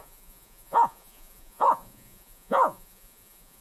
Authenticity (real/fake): fake